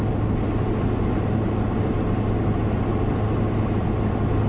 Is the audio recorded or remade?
recorded